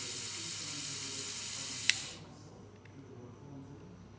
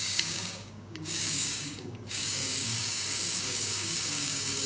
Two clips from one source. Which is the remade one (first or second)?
second